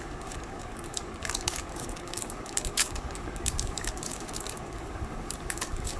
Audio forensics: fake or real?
fake